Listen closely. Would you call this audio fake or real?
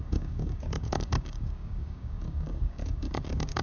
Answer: fake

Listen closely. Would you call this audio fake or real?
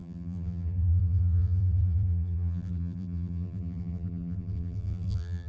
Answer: fake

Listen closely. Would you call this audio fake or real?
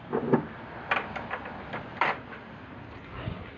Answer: real